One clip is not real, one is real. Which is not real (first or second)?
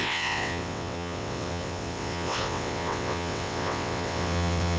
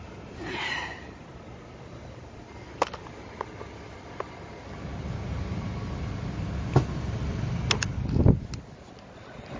first